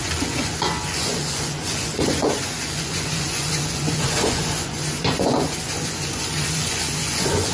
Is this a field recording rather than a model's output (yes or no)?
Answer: no